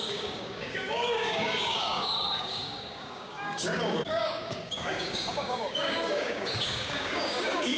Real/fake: fake